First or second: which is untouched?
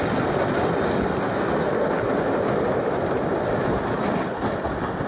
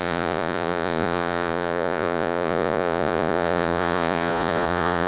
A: first